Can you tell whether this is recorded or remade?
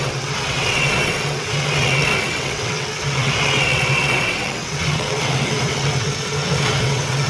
remade